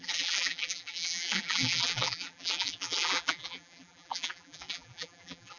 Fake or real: fake